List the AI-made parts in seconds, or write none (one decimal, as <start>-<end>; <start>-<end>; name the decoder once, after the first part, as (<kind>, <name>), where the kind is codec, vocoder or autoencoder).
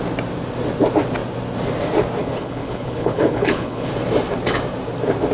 2.2-3.9 (codec, HILCodec)